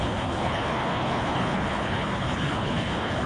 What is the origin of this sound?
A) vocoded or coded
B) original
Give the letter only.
A